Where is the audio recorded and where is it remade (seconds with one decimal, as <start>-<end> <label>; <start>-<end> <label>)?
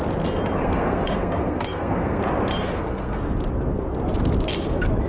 0.0-0.6 recorded; 0.6-2.2 remade; 2.2-2.6 recorded; 2.6-3.2 remade; 3.2-5.1 recorded